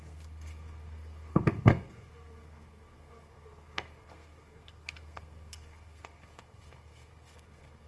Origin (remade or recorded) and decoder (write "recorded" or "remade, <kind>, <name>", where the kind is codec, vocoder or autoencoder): remade, codec, SNAC